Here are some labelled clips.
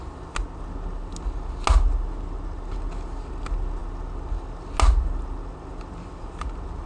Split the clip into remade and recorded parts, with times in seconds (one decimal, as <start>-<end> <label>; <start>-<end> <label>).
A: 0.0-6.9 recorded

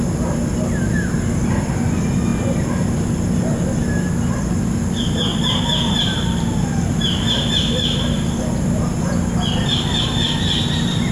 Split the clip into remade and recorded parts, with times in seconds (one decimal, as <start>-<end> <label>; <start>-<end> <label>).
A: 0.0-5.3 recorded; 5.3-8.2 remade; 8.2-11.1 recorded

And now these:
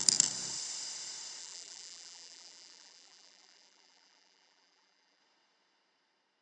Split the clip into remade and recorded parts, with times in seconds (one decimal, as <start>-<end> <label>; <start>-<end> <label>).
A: 0.0-1.4 recorded; 1.4-5.2 remade; 5.2-6.4 recorded

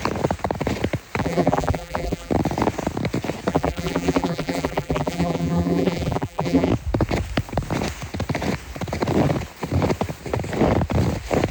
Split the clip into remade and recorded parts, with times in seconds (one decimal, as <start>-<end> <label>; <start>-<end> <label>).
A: 0.0-1.2 recorded; 1.2-2.3 remade; 2.3-3.5 recorded; 3.5-6.7 remade; 6.7-11.5 recorded

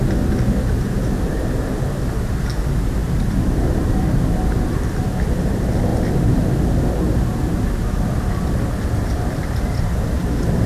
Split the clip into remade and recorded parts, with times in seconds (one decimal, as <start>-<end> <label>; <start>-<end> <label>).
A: 0.0-3.0 recorded; 3.0-5.0 remade; 5.0-5.9 recorded; 5.9-6.5 remade; 6.5-10.7 recorded